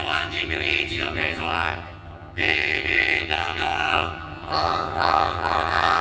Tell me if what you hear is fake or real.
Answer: fake